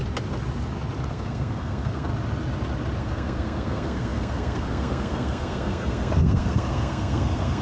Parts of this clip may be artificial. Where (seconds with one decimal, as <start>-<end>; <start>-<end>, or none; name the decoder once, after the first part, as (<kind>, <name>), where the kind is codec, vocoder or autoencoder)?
1.1-2.1 (codec, SNAC); 3.0-7.6